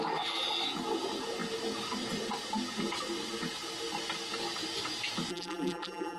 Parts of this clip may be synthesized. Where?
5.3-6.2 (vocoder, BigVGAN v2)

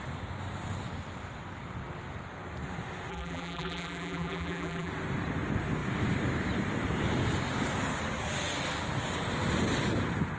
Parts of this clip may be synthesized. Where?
3.1-4.9 (vocoder, BigVGAN v2)

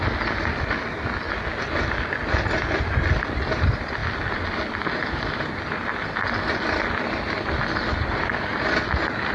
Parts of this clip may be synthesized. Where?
none

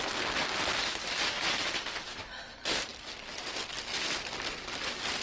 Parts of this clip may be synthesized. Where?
2.9-3.4 (vocoder, BigVGAN v2)

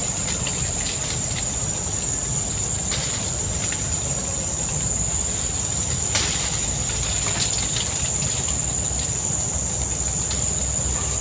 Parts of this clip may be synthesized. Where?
0.0-4.9 (vocoder, BigVGAN v2)

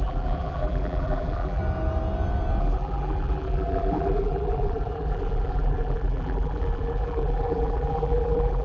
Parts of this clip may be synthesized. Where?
0.0-1.6 (vocoder, BigVGAN v2); 2.6-8.6

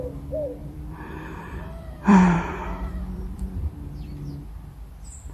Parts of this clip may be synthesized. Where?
0.6-3.7 (vocoder, BigVGAN v2)